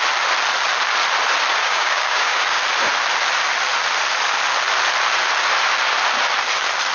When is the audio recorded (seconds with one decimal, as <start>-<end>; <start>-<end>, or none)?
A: 0.0-1.6; 2.4-6.9